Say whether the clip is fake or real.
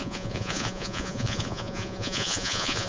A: fake